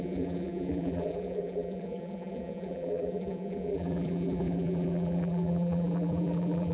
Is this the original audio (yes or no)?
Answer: no